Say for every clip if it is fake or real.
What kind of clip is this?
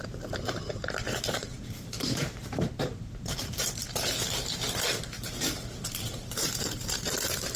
fake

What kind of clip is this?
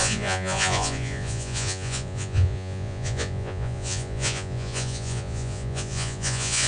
fake